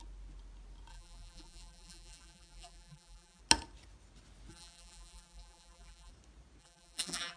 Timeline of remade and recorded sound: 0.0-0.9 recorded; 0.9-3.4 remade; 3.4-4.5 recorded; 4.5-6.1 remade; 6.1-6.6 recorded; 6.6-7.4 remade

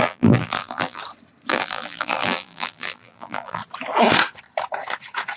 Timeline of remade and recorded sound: 0.0-1.0 remade; 1.0-1.5 recorded; 1.5-3.6 remade; 3.6-5.4 recorded

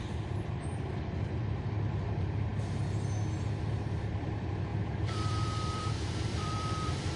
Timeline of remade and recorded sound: 0.0-2.5 remade; 2.5-4.1 recorded; 4.1-7.2 remade

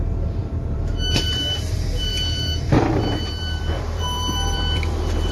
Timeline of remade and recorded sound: 0.0-5.3 remade

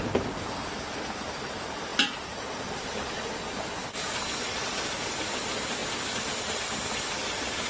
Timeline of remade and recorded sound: 0.0-1.9 recorded; 1.9-4.4 remade; 4.4-5.8 recorded; 5.8-6.6 remade; 6.6-7.7 recorded

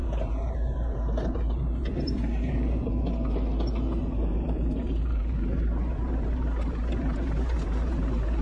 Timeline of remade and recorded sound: 0.0-3.0 remade; 3.0-4.0 recorded; 4.0-8.4 remade

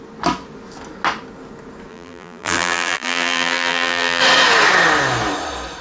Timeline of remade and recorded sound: 0.0-1.9 recorded; 1.9-4.2 remade; 4.2-5.8 recorded

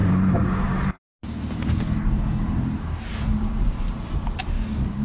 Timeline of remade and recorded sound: 0.0-1.1 remade; 1.1-3.1 recorded; 3.1-4.4 remade; 4.4-5.0 recorded